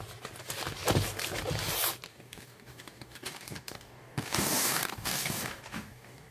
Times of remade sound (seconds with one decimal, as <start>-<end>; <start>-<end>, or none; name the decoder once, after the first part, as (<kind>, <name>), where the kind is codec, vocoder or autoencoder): 2.1-6.3 (codec, DAC)